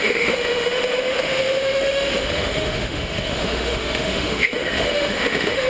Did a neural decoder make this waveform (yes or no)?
yes